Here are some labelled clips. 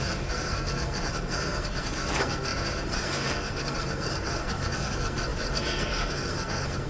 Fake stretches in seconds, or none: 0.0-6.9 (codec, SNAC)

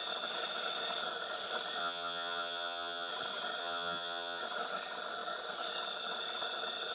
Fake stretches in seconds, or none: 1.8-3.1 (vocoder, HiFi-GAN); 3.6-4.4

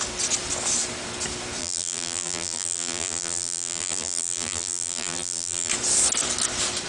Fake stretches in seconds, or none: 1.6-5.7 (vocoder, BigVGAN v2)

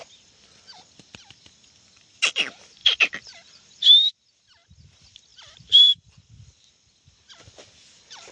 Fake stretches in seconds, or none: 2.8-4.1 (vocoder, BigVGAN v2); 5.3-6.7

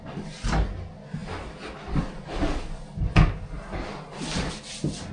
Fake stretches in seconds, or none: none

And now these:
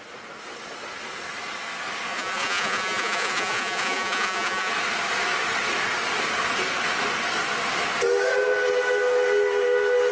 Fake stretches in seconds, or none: 2.1-4.7 (vocoder, Vocos)

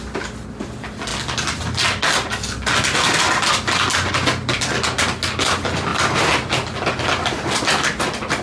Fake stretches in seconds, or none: none

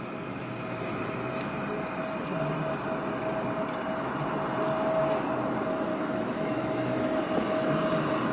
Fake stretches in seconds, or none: 5.9-7.9 (autoencoder, DAC-VAE)